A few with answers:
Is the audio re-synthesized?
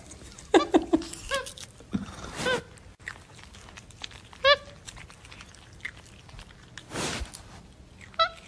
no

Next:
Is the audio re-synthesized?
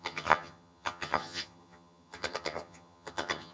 yes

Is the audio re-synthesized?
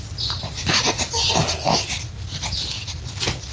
no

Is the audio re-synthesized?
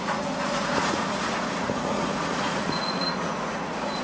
yes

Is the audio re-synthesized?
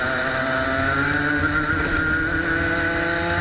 no